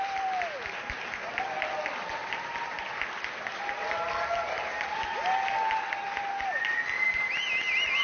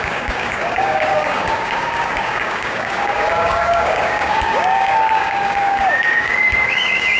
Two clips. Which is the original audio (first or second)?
first